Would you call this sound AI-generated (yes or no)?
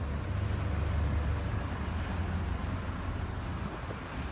no